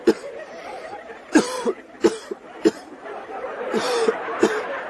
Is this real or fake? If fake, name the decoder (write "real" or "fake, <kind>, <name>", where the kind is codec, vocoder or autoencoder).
fake, vocoder, BigVGAN v2